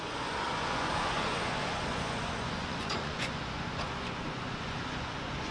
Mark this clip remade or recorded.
remade